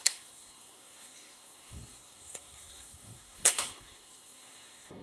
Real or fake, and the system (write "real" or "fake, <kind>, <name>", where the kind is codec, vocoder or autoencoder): fake, codec, SNAC